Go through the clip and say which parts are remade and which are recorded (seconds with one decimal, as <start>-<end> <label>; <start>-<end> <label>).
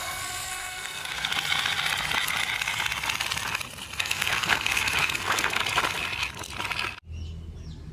0.0-1.3 remade; 1.3-4.0 recorded; 4.0-5.6 remade; 5.6-7.9 recorded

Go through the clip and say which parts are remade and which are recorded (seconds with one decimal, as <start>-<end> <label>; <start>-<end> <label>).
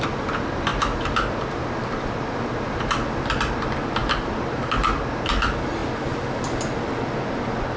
0.0-7.8 recorded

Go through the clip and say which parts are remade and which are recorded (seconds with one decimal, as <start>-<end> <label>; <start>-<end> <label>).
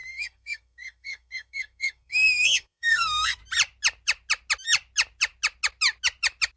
0.0-3.4 remade; 3.4-6.6 recorded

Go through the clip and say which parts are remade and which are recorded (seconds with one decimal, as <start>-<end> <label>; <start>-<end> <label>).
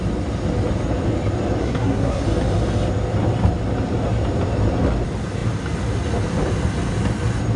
0.0-1.6 recorded; 1.6-2.2 remade; 2.2-7.6 recorded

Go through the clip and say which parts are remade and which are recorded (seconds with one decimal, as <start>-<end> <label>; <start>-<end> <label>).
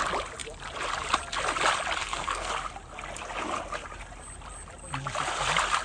0.0-2.0 recorded; 2.0-2.5 remade; 2.5-5.8 recorded